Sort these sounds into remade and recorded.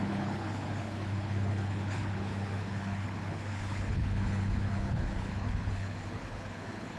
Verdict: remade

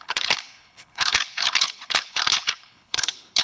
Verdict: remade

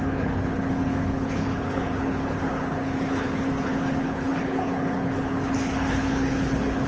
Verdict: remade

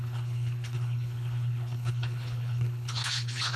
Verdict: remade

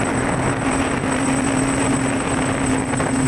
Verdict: recorded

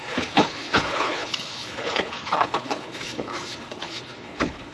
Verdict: remade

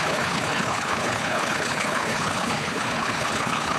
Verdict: remade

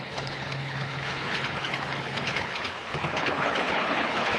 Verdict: remade